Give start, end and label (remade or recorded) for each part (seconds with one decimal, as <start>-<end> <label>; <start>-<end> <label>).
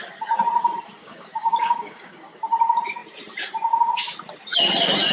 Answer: 0.0-1.0 recorded; 1.0-2.4 remade; 2.4-5.1 recorded